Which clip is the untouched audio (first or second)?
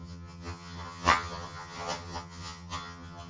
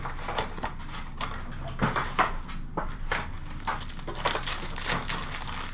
second